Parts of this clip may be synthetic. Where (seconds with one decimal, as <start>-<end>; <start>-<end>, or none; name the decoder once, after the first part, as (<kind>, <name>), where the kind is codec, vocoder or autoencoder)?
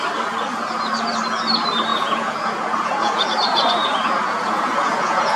1.9-5.4 (vocoder, Vocos)